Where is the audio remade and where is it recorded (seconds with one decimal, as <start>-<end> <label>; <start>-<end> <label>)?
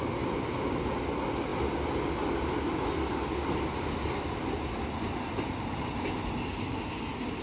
0.0-7.4 recorded